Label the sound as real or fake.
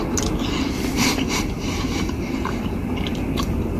real